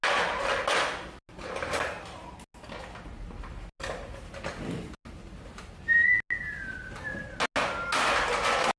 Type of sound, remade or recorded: recorded